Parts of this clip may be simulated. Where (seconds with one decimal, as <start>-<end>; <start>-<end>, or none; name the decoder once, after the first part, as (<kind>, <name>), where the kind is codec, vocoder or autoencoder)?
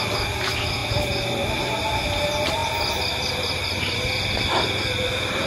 none